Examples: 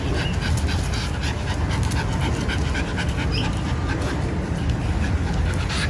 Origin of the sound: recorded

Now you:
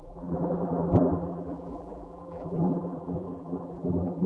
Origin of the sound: remade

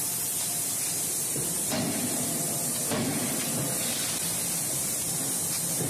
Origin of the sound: recorded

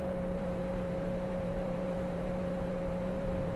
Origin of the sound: remade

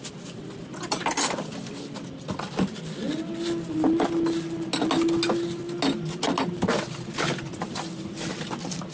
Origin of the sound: recorded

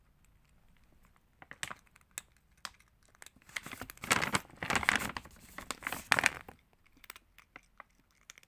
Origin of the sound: recorded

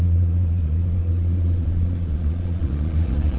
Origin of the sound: remade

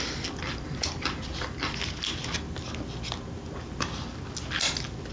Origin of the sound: recorded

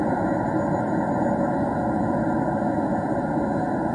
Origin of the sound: recorded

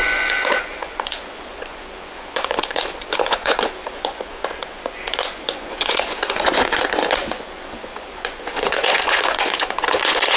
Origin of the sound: remade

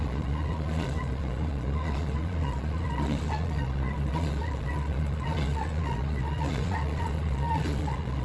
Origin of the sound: remade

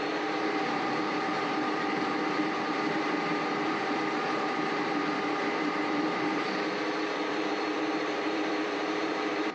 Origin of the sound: remade